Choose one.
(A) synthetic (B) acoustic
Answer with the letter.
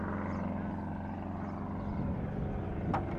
B